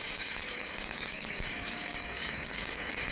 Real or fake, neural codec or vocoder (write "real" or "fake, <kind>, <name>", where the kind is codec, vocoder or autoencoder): fake, codec, DAC